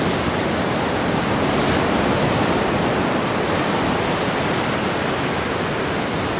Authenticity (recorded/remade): recorded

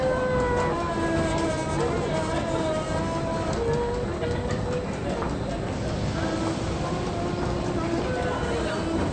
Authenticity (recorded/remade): recorded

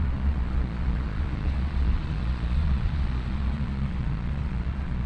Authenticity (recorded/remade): remade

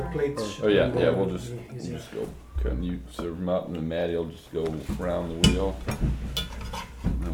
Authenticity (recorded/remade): recorded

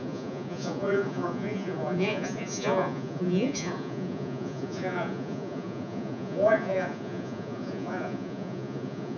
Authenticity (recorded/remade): remade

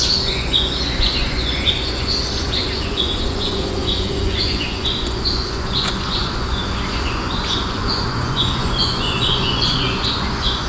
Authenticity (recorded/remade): remade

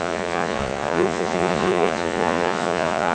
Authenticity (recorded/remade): remade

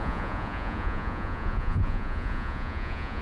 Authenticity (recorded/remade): remade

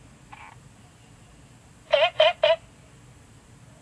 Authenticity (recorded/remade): recorded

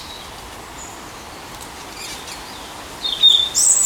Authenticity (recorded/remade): recorded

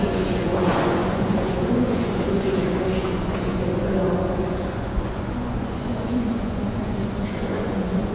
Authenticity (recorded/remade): remade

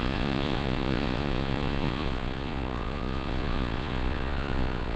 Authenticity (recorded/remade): remade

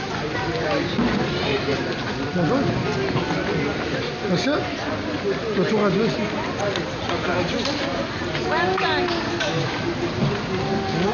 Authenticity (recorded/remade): recorded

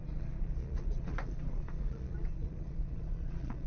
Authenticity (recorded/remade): remade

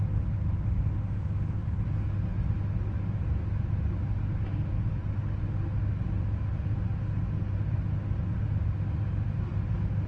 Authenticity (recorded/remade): recorded